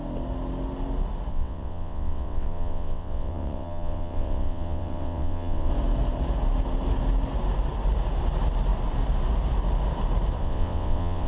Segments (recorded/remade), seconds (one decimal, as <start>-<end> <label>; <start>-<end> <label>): 0.0-1.3 recorded; 1.3-5.7 remade; 5.7-10.4 recorded; 10.4-11.3 remade